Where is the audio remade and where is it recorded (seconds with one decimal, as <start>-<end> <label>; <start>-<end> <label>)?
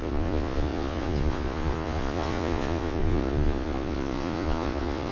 0.0-5.1 remade